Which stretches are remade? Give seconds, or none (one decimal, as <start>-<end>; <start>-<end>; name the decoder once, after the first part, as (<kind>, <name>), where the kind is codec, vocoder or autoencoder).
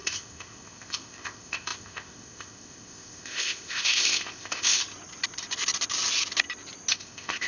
0.0-4.8 (codec, ZipCodec); 6.9-7.5